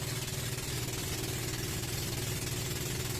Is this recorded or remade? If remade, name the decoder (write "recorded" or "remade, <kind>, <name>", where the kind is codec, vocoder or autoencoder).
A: recorded